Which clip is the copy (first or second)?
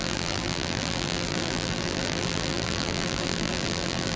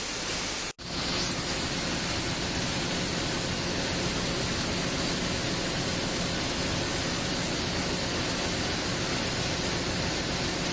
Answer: first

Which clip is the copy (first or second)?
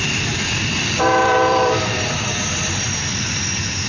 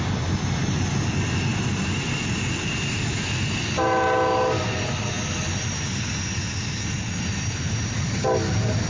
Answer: first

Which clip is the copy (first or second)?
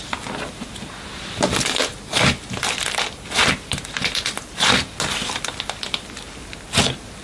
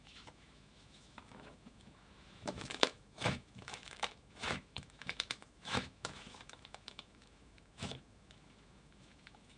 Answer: second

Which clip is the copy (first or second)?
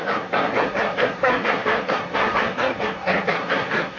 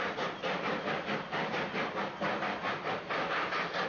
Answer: first